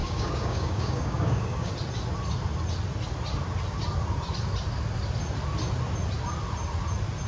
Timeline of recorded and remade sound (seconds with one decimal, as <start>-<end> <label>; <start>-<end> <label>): 0.0-1.7 remade; 1.7-7.3 recorded

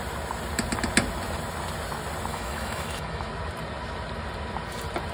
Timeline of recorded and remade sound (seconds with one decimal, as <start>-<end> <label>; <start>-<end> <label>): 0.0-2.3 recorded; 2.3-3.3 remade; 3.3-5.1 recorded

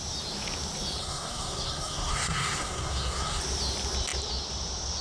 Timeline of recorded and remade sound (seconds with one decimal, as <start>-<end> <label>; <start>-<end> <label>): 0.0-1.0 recorded; 1.0-3.4 remade; 3.4-5.0 recorded

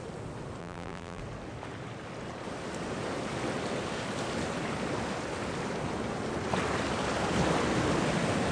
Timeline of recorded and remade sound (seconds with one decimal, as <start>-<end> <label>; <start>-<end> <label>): 0.0-0.6 recorded; 0.6-1.2 remade; 1.2-8.5 recorded

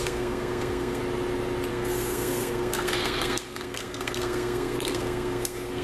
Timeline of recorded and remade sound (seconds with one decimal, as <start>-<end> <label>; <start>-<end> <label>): 0.0-1.0 remade; 1.0-1.7 recorded; 1.7-5.8 remade

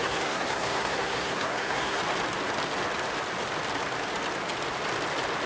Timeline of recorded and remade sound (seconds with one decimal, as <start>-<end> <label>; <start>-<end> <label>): 0.0-2.0 remade; 2.0-5.5 recorded

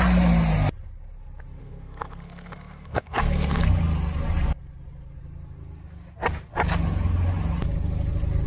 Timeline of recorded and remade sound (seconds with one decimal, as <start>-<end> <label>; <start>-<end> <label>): 0.0-1.6 recorded; 1.6-3.6 remade; 3.6-8.5 recorded